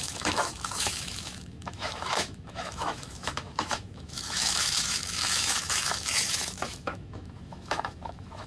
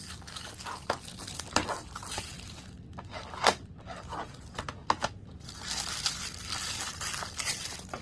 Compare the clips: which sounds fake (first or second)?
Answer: first